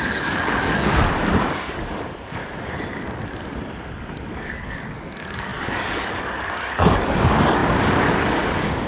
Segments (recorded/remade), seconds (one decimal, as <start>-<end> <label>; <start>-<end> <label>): 0.0-2.4 remade; 2.4-3.8 recorded; 3.8-8.9 remade

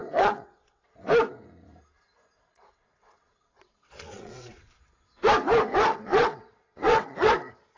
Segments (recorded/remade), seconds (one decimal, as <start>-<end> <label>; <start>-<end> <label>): 0.0-1.1 remade; 1.1-2.5 recorded; 2.5-5.3 remade; 5.3-5.9 recorded; 5.9-7.3 remade; 7.3-7.8 recorded

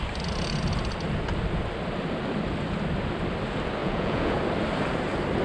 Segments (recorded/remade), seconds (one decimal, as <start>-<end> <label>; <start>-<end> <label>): 0.0-3.8 recorded; 3.8-4.4 remade; 4.4-5.4 recorded

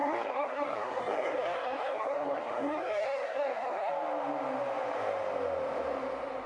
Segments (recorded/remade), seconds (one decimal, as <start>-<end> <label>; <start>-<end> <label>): 0.0-3.9 remade; 3.9-6.5 recorded

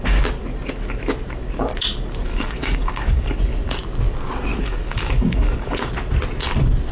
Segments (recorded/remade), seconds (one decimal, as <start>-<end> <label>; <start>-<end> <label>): 0.0-2.3 recorded; 2.3-3.4 remade; 3.4-4.5 recorded; 4.5-5.9 remade; 5.9-6.9 recorded

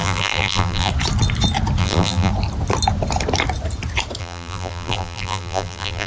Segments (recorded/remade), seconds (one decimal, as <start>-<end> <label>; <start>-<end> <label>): 0.0-0.9 remade; 0.9-1.8 recorded; 1.8-2.3 remade; 2.3-4.2 recorded; 4.2-6.1 remade

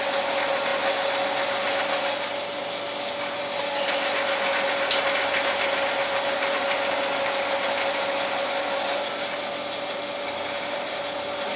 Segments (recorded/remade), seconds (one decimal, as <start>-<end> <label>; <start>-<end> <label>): 0.0-11.6 recorded